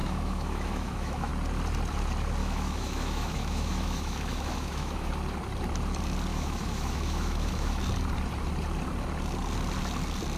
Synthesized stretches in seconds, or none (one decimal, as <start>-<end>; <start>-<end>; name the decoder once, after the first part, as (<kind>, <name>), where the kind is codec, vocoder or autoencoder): 0.0-1.3 (autoencoder, DAC-VAE); 2.4-5.1; 6.3-7.8